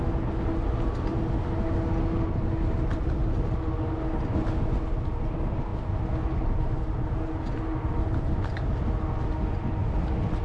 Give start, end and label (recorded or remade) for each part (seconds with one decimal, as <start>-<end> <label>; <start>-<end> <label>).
0.0-10.4 recorded